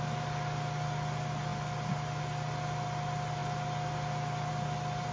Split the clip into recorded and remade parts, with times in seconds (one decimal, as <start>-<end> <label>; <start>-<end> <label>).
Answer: 0.0-5.1 recorded